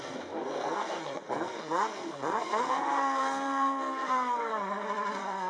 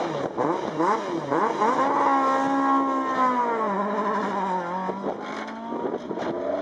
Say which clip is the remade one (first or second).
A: first